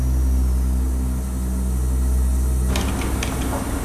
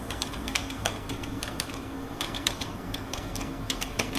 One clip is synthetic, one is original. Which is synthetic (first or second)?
second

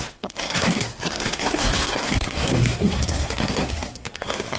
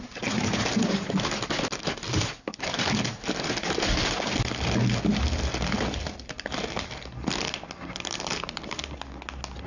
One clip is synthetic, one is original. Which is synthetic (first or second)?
first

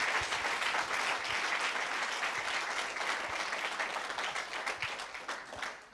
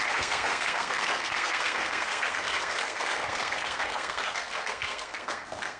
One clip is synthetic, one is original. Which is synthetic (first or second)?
second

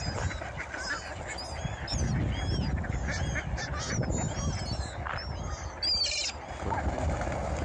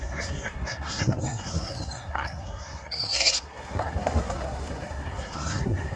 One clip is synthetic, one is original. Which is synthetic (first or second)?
second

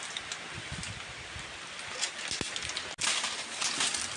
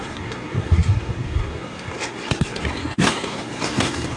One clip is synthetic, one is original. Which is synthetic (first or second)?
second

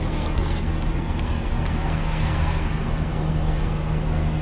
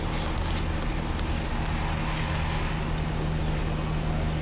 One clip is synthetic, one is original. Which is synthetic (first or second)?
first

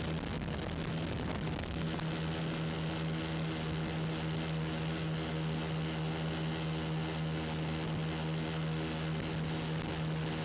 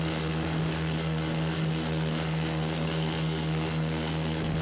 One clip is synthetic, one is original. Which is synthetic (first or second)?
second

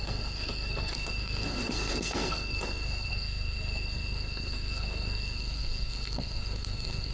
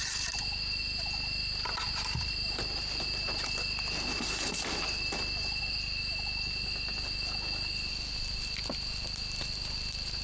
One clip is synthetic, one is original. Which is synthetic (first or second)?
first